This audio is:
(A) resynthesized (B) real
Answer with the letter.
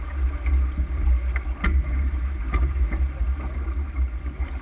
B